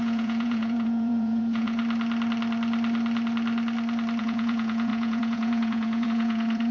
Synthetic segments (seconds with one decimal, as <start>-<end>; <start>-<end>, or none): 0.0-1.8; 4.2-6.7